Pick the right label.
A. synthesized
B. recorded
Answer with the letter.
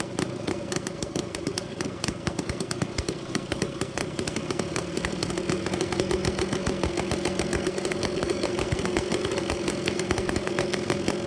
A